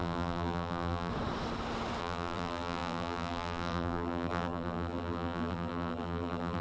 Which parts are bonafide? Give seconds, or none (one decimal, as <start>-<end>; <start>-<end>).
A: 1.1-2.0